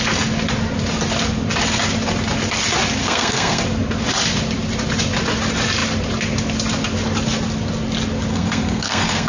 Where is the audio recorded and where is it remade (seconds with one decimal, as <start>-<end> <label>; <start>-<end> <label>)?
0.0-3.0 recorded; 3.0-3.6 remade; 3.6-8.3 recorded; 8.3-9.3 remade